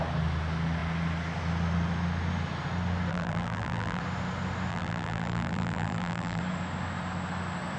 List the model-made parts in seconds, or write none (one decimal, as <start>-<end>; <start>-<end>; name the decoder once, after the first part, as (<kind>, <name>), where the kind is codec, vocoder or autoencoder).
3.1-4.0 (vocoder, BigVGAN v2); 4.7-6.4